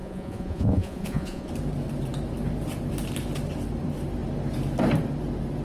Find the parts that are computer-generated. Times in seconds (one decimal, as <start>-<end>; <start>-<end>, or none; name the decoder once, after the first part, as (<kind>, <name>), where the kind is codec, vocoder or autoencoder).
0.0-1.5 (vocoder, Vocos)